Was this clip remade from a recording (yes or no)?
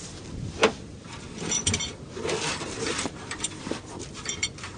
yes